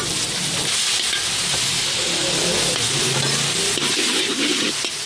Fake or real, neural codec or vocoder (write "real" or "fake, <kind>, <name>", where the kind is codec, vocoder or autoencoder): real